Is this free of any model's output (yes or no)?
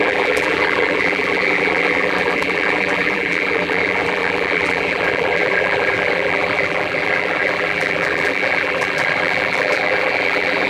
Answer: no